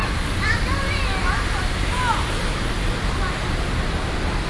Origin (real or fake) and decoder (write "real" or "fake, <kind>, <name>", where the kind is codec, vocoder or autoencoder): real